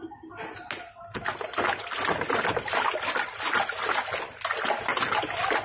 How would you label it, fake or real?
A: real